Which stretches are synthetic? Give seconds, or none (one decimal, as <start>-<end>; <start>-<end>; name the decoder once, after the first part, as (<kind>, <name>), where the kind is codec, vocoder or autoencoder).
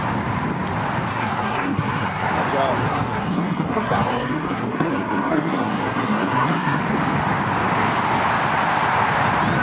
1.1-2.3 (codec, SNAC); 2.8-6.8